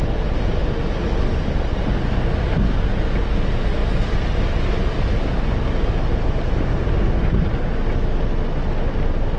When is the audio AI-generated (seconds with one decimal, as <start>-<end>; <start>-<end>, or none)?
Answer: 3.8-5.5